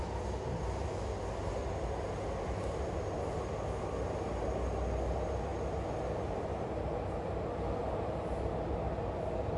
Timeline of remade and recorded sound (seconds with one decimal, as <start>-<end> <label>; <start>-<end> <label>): 0.0-9.6 recorded